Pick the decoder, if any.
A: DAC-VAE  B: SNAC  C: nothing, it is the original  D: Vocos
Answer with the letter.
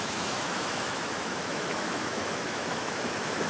A